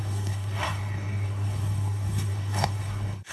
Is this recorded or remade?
remade